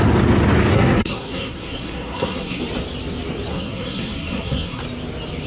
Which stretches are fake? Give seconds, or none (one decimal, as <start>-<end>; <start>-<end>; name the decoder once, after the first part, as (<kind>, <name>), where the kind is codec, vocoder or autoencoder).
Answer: 0.7-2.6 (codec, SNAC); 3.5-4.8